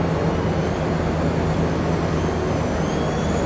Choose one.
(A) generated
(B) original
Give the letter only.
B